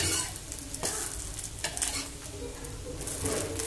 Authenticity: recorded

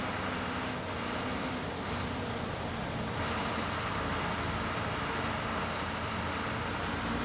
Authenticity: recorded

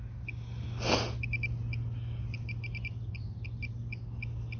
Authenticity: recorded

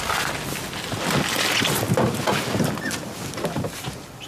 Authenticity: recorded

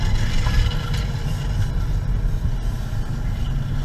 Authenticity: recorded